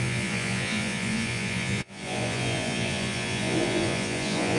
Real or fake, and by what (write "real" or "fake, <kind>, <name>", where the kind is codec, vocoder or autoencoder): fake, vocoder, Vocos